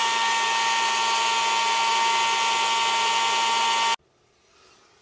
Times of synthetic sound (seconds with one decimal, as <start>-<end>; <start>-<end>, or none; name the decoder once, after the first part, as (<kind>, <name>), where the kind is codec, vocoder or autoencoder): none